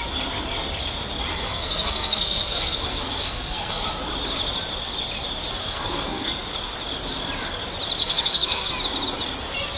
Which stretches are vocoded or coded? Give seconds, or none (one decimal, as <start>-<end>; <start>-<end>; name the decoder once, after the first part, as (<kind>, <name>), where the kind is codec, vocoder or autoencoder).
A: 1.3-3.9 (codec, SNAC); 5.6-6.3; 8.0-8.7